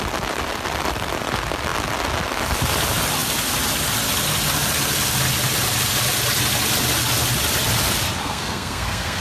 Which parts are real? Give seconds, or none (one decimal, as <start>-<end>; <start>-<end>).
0.0-8.2